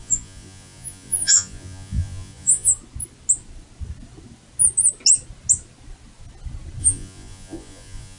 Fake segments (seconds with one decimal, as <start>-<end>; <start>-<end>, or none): 0.0-2.7; 6.8-8.2